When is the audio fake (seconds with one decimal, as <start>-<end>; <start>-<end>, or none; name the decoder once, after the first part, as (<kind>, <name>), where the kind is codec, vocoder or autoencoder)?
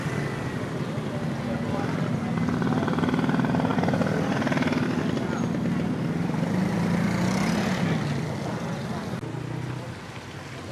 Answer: none